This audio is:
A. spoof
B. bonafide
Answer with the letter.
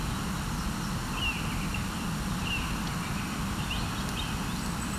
B